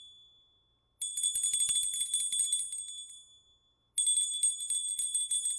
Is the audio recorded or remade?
recorded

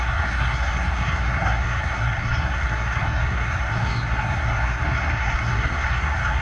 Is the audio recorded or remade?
remade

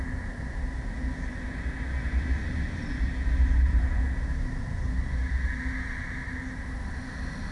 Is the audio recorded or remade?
recorded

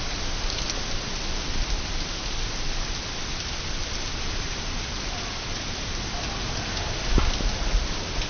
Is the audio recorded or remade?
recorded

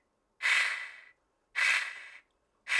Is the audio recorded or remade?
recorded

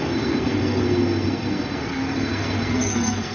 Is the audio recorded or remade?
remade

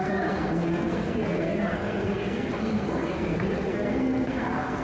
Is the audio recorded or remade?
remade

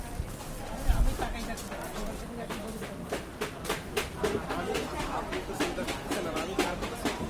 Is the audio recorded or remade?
recorded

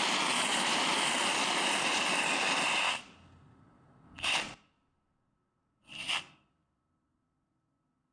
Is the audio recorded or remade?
recorded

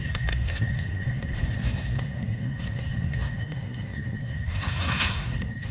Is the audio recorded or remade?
remade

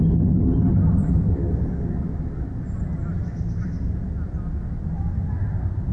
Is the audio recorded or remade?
recorded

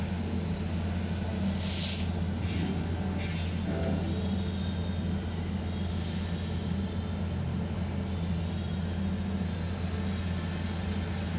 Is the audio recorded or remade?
recorded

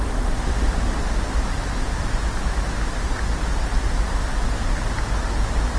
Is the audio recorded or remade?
recorded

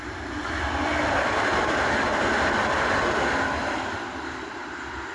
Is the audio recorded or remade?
recorded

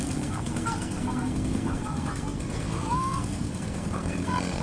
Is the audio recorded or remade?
remade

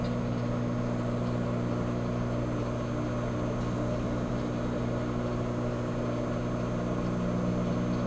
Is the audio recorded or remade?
recorded